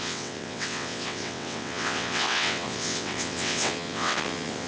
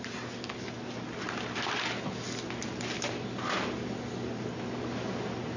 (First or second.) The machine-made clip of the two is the first